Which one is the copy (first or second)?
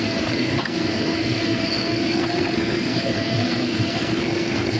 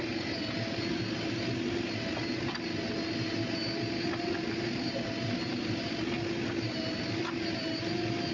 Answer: first